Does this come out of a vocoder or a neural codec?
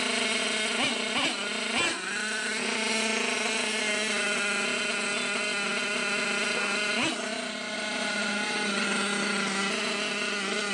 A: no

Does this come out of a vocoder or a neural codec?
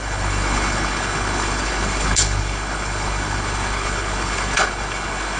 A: yes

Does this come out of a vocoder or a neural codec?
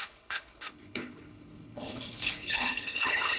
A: yes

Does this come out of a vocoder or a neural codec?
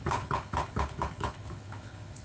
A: yes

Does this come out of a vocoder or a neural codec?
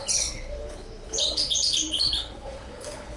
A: yes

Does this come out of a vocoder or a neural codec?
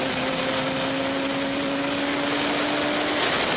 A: no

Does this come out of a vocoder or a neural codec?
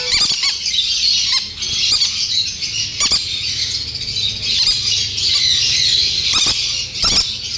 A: no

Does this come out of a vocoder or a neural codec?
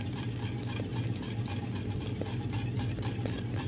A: no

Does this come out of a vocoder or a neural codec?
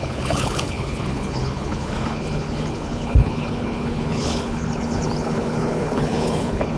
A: yes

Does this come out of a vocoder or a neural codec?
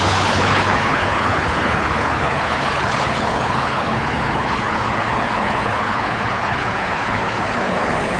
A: yes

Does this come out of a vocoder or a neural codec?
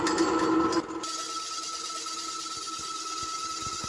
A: no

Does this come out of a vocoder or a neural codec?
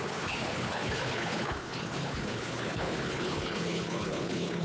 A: yes